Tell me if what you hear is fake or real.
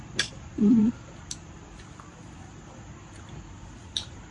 fake